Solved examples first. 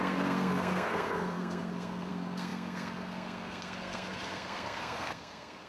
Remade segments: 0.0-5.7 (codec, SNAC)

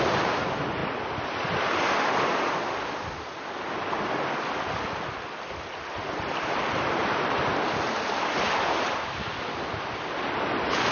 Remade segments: none

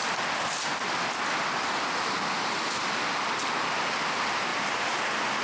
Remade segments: none